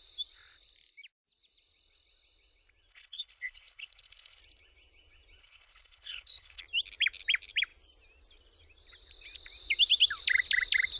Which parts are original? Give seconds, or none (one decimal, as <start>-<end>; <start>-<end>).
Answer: 0.0-2.9; 4.4-5.4; 6.6-11.0